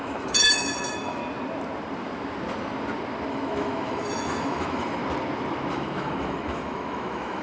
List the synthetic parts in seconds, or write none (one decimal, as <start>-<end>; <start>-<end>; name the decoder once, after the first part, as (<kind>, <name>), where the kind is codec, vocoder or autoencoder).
0.0-1.2 (autoencoder, DAC-VAE); 3.3-5.0; 5.7-7.4